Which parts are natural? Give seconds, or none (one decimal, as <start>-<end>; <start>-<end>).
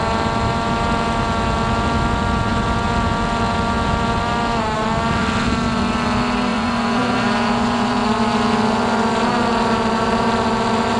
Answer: 0.0-6.5; 8.0-11.0